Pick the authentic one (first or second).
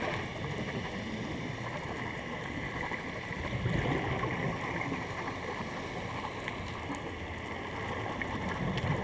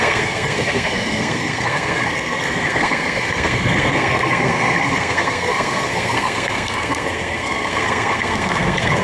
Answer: first